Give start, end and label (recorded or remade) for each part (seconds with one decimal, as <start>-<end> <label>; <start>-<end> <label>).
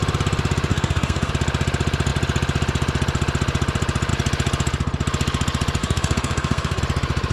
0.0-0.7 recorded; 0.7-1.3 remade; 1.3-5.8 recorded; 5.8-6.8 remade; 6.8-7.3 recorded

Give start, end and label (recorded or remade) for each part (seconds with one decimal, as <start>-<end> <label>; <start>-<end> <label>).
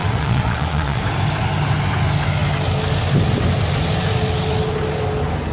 0.0-1.0 remade; 1.0-5.5 recorded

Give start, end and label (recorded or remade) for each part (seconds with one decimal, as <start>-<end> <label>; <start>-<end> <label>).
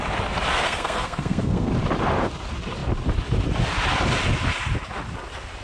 0.0-0.5 recorded; 0.5-1.7 remade; 1.7-5.6 recorded